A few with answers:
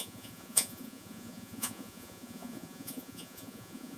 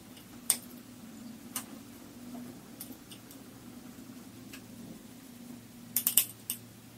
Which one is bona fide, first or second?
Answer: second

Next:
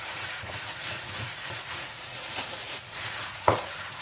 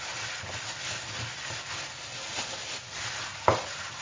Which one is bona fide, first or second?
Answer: second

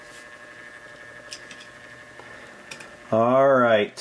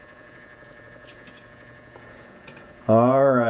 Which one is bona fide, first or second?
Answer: first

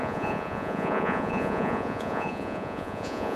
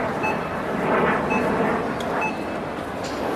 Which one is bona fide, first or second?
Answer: second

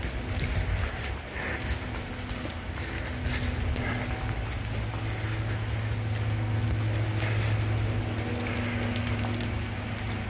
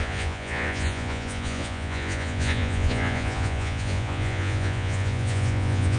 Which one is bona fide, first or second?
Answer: first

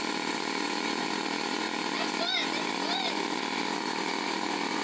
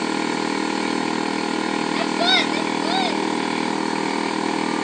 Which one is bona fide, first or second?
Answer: second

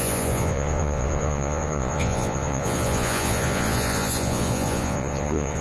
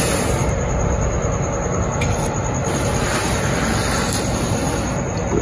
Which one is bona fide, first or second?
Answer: second